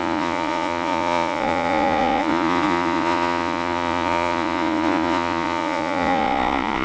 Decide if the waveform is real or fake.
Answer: fake